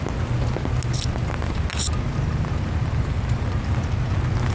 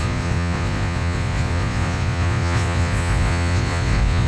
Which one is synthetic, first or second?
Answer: second